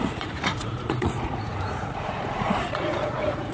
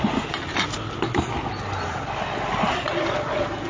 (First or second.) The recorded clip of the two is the second